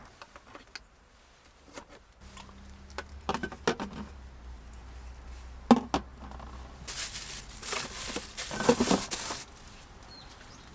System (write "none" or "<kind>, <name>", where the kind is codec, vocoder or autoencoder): none